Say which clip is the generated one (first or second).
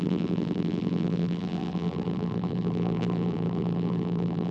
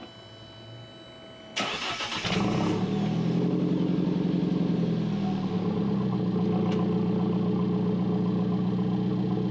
first